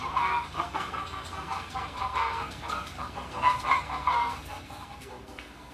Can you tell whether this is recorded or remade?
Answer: remade